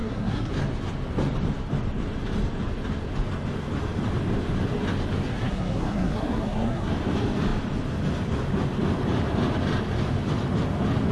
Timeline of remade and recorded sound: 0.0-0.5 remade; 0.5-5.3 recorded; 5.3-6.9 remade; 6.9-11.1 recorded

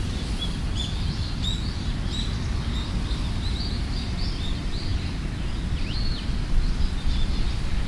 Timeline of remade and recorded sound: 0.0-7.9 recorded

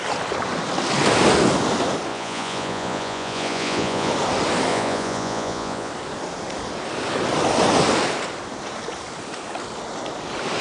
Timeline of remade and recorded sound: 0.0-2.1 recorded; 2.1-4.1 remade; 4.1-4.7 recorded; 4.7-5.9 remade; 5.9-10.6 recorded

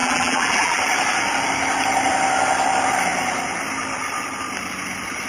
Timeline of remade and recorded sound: 0.0-0.8 remade; 0.8-5.3 recorded

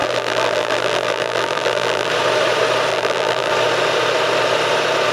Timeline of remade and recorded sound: 0.0-2.1 remade; 2.1-2.9 recorded; 2.9-3.5 remade; 3.5-5.1 recorded

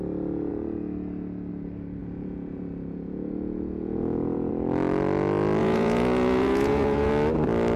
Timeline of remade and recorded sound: 0.0-2.0 recorded; 2.0-4.5 remade; 4.5-5.6 recorded; 5.6-7.1 remade; 7.1-7.8 recorded

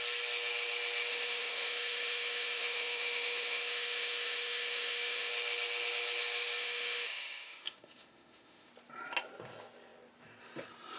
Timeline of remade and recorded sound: 0.0-1.1 recorded; 1.1-5.3 remade; 5.3-6.6 recorded; 6.6-8.7 remade; 8.7-11.0 recorded

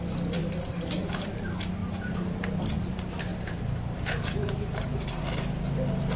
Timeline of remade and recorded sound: 0.0-0.4 recorded; 0.4-1.3 remade; 1.3-1.8 recorded; 1.8-2.5 remade; 2.5-3.3 recorded; 3.3-5.2 remade; 5.2-6.2 recorded